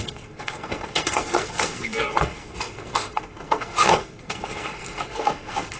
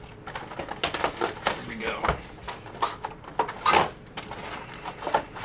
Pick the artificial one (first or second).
first